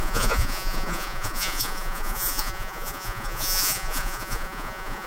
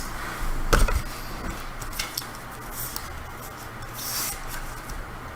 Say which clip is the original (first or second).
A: second